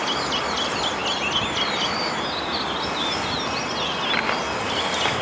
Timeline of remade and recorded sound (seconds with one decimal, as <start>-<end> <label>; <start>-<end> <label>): 0.0-5.2 recorded